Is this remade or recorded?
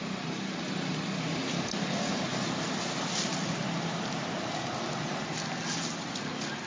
recorded